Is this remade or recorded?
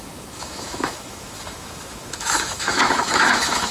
remade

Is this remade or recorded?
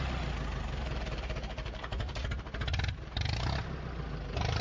recorded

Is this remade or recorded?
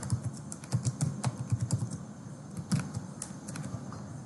recorded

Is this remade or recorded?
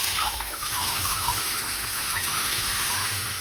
remade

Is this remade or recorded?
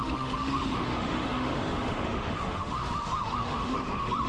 remade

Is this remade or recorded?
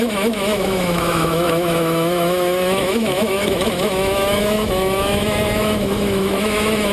remade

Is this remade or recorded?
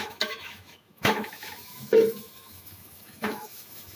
remade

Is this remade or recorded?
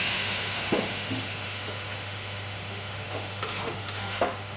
remade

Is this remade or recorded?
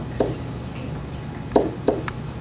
recorded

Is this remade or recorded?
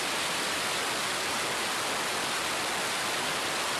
recorded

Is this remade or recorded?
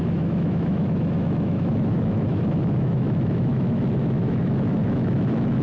remade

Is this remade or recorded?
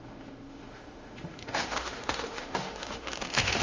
remade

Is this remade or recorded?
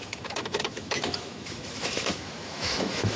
remade